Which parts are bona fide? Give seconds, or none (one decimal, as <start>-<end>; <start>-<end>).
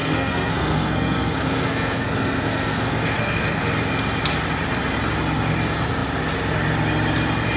3.6-7.6